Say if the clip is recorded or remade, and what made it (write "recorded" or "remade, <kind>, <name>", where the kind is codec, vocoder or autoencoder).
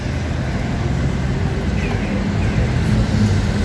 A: recorded